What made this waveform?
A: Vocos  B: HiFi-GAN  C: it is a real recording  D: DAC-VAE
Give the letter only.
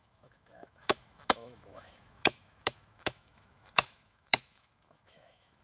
D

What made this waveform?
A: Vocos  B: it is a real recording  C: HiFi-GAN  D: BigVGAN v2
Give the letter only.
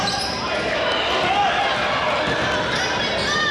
B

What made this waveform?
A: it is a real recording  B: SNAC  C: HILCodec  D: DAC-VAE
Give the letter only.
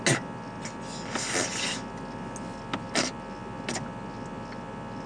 A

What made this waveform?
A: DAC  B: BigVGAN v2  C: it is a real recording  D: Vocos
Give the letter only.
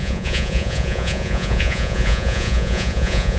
D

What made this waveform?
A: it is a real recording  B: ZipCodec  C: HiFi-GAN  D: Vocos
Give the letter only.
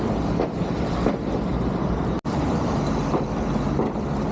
A